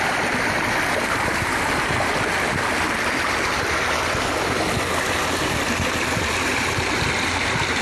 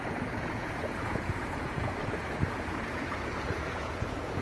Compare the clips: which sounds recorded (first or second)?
first